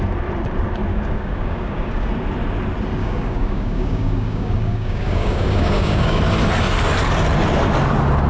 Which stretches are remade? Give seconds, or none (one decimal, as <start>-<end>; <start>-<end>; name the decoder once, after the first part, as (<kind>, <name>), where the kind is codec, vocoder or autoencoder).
0.9-2.1 (codec, DAC); 3.0-6.2